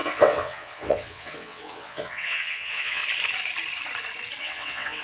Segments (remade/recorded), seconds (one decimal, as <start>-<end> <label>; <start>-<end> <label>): 0.0-3.0 remade; 3.0-4.4 recorded; 4.4-5.0 remade